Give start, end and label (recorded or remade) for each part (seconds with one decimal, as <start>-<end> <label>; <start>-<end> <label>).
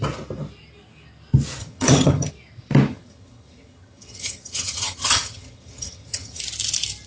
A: 0.0-1.6 recorded; 1.6-2.3 remade; 2.3-2.9 recorded; 2.9-6.4 remade; 6.4-7.1 recorded